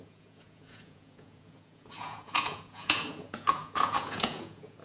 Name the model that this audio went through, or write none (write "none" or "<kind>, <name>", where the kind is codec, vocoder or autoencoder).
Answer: vocoder, Vocos